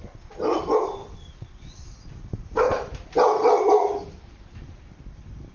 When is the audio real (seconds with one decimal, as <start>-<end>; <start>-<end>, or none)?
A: 0.0-1.0; 3.6-5.5